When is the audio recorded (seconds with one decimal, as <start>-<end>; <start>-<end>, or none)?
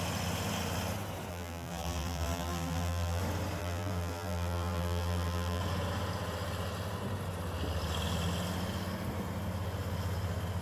0.0-1.3; 3.2-3.6; 5.6-10.6